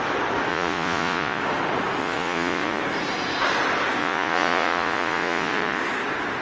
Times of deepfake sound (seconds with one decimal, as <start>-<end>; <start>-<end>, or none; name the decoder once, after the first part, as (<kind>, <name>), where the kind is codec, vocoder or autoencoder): 0.5-1.4 (vocoder, Vocos); 2.0-2.8; 4.0-5.8